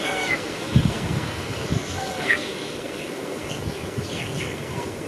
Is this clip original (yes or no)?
no